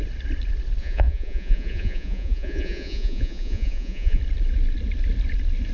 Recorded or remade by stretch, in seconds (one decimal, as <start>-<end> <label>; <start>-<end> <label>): 0.0-0.8 recorded; 0.8-4.2 remade; 4.2-5.7 recorded